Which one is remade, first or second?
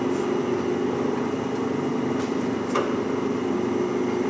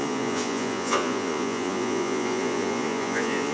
second